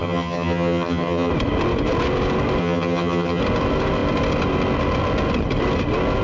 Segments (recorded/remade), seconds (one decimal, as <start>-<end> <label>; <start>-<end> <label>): 0.0-1.3 remade; 1.3-2.6 recorded; 2.6-3.4 remade; 3.4-6.2 recorded